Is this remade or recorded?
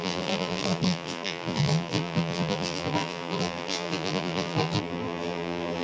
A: remade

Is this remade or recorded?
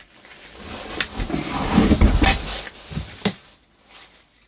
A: recorded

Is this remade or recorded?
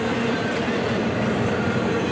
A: recorded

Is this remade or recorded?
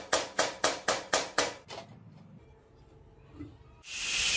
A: recorded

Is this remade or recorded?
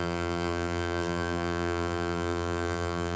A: remade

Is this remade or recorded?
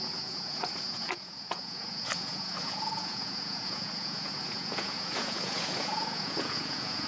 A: remade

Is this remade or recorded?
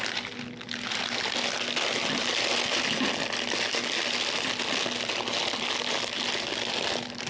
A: recorded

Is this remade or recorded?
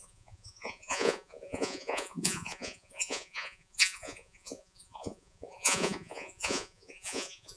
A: remade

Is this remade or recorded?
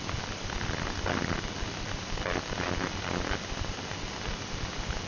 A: remade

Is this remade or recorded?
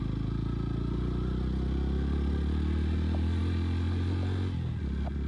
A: recorded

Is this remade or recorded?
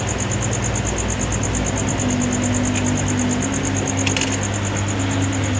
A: recorded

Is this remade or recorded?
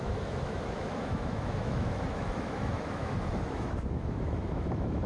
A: remade